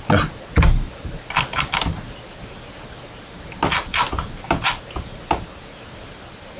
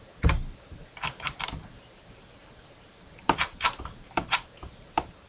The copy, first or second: second